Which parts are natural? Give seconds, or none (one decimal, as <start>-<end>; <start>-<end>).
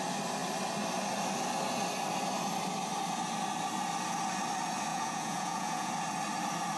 0.0-4.9; 5.9-6.8